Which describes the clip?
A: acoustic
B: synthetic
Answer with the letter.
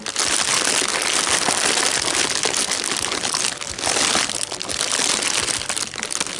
A